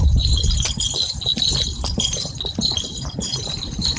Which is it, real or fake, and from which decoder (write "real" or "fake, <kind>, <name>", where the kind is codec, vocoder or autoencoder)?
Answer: real